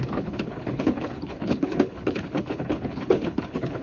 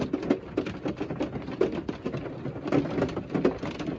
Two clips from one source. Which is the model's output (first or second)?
first